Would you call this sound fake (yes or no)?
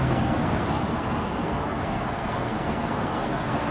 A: yes